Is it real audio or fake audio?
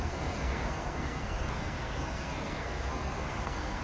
fake